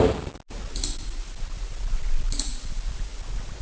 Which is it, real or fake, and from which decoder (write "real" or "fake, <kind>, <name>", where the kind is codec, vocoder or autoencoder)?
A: real